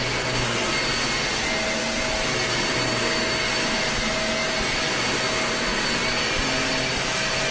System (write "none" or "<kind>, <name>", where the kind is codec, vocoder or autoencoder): none